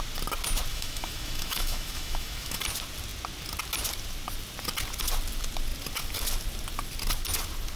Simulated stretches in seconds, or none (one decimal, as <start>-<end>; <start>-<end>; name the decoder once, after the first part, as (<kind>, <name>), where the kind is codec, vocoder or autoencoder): 0.7-2.6 (autoencoder, DAC-VAE)